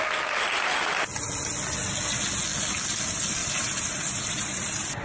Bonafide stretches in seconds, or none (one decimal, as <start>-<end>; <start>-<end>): 0.0-3.4